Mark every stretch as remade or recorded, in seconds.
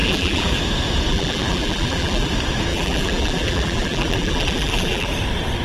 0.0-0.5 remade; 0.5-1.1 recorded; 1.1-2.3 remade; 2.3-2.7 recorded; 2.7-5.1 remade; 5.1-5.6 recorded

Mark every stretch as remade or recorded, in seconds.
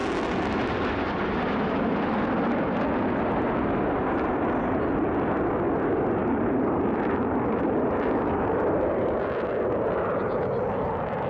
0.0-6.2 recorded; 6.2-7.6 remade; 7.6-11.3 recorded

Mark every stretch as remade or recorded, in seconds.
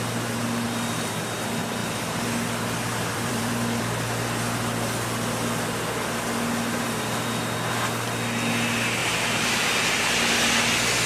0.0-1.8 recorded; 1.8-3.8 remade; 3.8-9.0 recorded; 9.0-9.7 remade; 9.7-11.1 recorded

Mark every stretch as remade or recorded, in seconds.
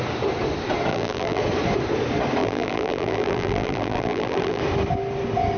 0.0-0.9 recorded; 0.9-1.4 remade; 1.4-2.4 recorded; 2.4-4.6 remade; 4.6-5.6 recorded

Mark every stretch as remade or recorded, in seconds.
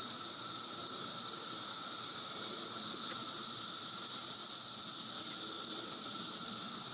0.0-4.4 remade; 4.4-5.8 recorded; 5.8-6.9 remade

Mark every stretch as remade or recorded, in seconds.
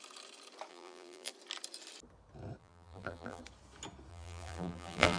0.0-0.7 recorded; 0.7-1.3 remade; 1.3-2.6 recorded; 2.6-3.4 remade; 3.4-4.1 recorded; 4.1-5.2 remade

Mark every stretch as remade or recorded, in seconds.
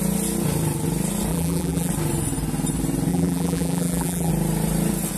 0.0-1.3 recorded; 1.3-1.9 remade; 1.9-3.1 recorded; 3.1-4.3 remade; 4.3-5.2 recorded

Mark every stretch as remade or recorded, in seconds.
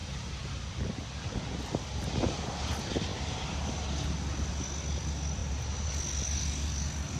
0.0-0.6 remade; 0.6-3.1 recorded; 3.1-3.8 remade; 3.8-5.4 recorded; 5.4-5.9 remade; 5.9-7.2 recorded